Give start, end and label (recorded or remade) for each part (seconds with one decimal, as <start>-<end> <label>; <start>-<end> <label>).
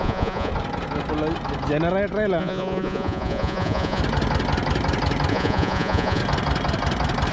0.0-0.5 remade; 0.5-2.4 recorded; 2.4-4.0 remade; 4.0-5.3 recorded; 5.3-6.2 remade; 6.2-7.3 recorded